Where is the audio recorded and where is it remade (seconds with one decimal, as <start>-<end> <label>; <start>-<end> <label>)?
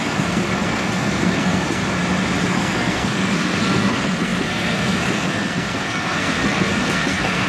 0.0-1.8 remade; 1.8-2.5 recorded; 2.5-7.5 remade